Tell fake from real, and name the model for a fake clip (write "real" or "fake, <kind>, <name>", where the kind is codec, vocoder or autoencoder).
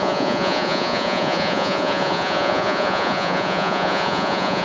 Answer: fake, vocoder, Vocos